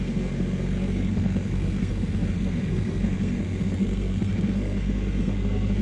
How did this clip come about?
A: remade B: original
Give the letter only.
A